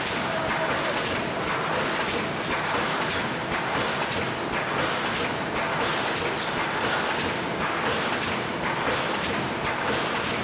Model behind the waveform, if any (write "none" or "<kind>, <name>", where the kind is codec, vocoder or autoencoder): none